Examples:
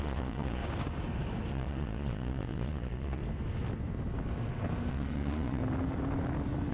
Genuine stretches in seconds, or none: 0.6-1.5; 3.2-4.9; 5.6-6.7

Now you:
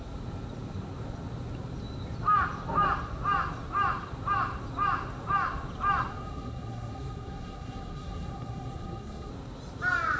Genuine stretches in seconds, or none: 0.0-6.1; 9.3-10.2

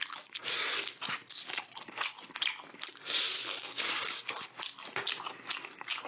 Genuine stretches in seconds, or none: 0.0-3.6; 4.3-6.1

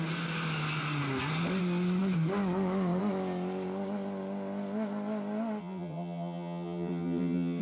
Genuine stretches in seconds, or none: 0.0-5.6